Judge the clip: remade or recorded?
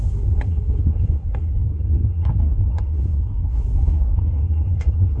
remade